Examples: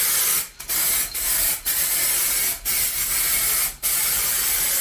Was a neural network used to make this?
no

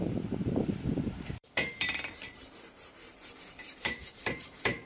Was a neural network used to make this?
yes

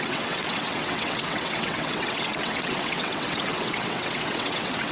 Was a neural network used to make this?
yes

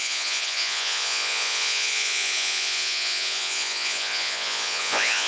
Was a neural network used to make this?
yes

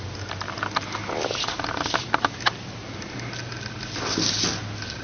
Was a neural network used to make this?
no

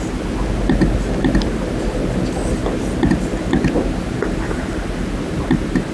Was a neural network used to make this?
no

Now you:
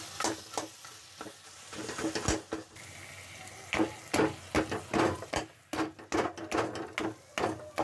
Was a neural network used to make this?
no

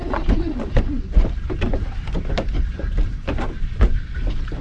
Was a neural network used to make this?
no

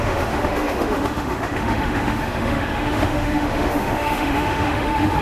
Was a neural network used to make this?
yes